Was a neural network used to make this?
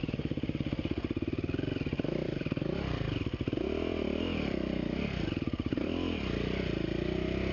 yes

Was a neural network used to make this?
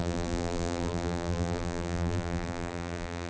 yes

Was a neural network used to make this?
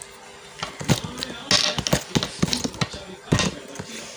no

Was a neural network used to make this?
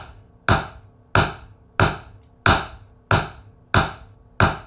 no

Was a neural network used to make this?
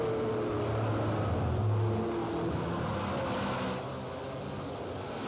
no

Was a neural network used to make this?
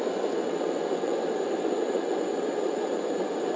yes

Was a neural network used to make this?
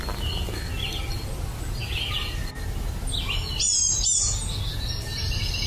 no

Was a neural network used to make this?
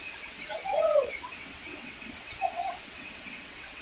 yes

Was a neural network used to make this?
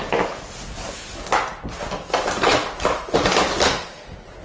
no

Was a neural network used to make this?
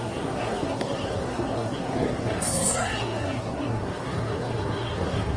yes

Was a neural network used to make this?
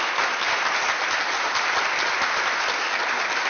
no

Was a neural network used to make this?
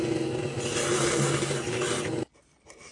yes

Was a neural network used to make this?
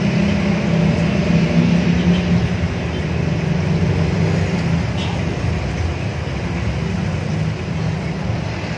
no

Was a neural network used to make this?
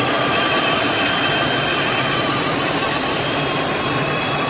yes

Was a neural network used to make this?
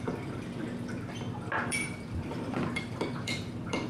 yes